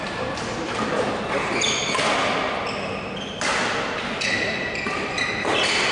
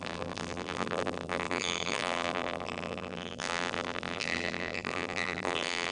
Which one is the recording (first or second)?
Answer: first